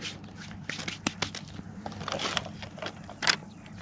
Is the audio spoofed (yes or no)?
no